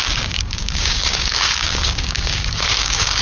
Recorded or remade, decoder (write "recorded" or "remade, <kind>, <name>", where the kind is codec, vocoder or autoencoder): remade, codec, DAC